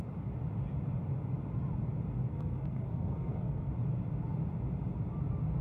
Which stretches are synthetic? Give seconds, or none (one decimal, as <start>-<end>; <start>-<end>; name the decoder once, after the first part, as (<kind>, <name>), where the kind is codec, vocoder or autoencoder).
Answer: 2.3-3.7 (codec, SNAC)